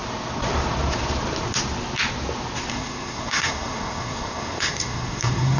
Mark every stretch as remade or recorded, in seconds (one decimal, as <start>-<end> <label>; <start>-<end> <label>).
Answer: 0.0-2.7 recorded; 2.7-5.6 remade